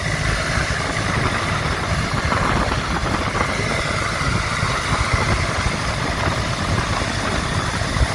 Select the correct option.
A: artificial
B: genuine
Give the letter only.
B